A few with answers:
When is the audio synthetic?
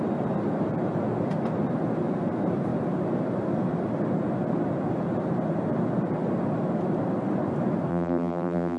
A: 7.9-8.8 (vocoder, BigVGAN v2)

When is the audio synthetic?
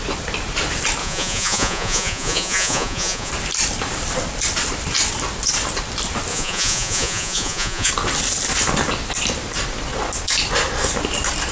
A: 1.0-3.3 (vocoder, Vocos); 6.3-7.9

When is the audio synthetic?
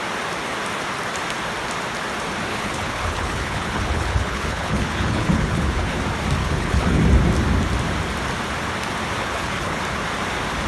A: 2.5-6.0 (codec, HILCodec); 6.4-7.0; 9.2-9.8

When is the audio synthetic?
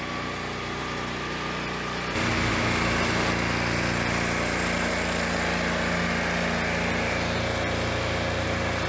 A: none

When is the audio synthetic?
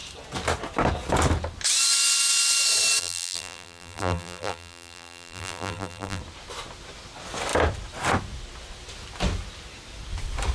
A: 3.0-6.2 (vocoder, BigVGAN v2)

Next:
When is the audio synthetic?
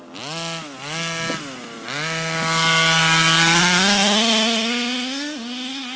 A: none